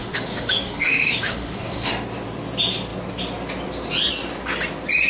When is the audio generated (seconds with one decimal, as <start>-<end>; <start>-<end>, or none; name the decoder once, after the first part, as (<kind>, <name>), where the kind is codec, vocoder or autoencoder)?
0.0-1.9 (autoencoder, DAC-VAE)